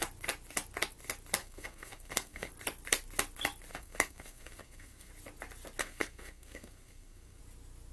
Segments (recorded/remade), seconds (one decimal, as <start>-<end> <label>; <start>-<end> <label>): 0.0-1.4 recorded; 1.4-2.5 remade; 2.5-3.7 recorded; 3.7-5.1 remade; 5.1-5.8 recorded; 5.8-7.4 remade; 7.4-7.9 recorded